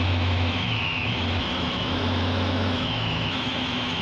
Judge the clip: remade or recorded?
remade